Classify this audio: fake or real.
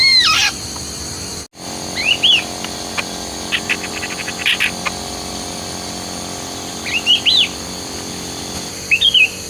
real